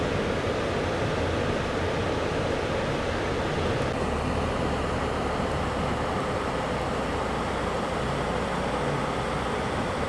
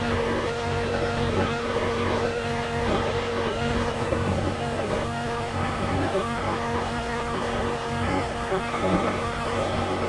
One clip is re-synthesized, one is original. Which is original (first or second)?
first